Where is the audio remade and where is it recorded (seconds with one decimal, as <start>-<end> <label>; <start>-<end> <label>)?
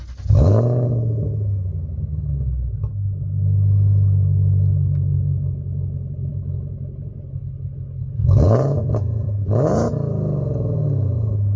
0.0-11.6 recorded